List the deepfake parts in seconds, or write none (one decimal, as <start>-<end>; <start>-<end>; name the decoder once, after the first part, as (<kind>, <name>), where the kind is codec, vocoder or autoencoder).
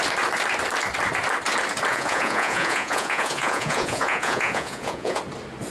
1.9-5.2 (vocoder, Vocos)